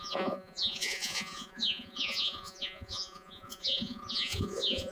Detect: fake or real fake